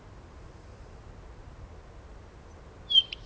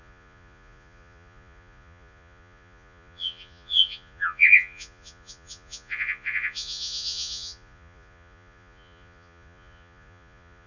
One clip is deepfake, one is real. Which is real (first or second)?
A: first